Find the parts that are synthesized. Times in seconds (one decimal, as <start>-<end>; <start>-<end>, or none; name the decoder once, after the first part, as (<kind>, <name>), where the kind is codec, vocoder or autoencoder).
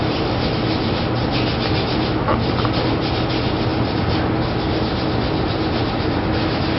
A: none